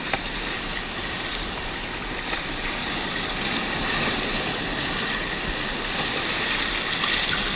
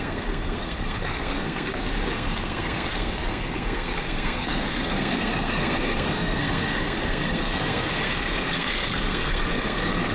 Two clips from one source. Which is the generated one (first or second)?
second